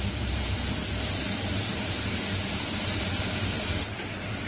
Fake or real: fake